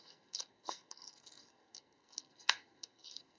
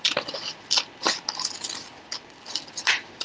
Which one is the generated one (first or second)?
first